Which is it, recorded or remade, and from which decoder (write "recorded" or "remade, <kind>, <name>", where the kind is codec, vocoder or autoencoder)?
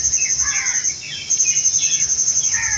recorded